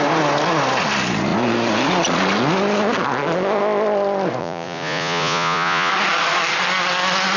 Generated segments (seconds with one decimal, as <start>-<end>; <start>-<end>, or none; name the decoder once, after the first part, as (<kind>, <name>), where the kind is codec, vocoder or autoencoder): 4.4-5.9 (vocoder, Vocos)